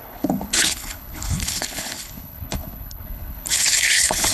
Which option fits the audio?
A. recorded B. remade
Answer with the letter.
B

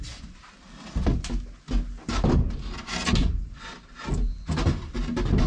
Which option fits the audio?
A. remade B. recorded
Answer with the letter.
B